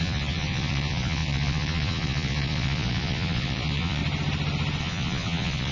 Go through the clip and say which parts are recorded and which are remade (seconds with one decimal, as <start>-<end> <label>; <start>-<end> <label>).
0.0-4.0 remade; 4.0-4.8 recorded; 4.8-5.7 remade